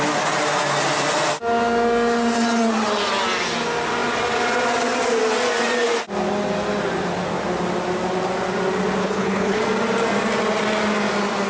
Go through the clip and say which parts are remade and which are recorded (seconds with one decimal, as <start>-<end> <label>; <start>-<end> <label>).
0.0-9.0 recorded; 9.0-9.6 remade; 9.6-11.5 recorded